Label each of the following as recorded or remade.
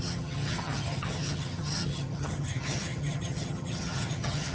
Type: remade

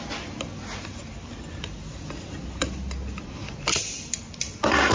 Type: recorded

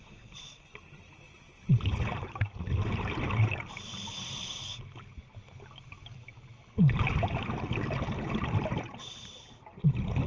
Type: recorded